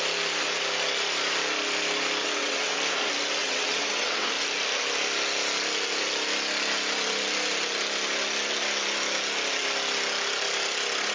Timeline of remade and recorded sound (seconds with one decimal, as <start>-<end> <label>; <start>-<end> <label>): 0.0-2.2 recorded; 2.2-2.8 remade; 2.8-3.4 recorded; 3.4-4.3 remade; 4.3-11.1 recorded